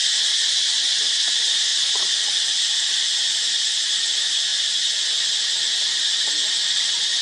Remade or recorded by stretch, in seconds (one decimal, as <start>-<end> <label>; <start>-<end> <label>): 0.0-4.5 remade; 4.5-6.3 recorded; 6.3-7.2 remade